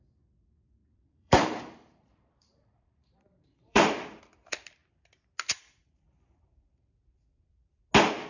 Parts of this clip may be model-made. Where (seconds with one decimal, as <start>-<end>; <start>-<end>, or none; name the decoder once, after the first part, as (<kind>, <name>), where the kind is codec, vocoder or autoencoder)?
0.8-4.2 (vocoder, BigVGAN v2)